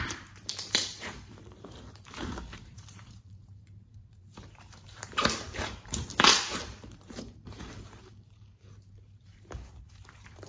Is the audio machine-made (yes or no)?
yes